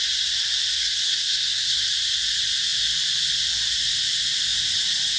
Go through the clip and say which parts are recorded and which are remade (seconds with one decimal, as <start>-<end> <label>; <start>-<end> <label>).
0.0-0.8 recorded; 0.8-1.8 remade; 1.8-5.2 recorded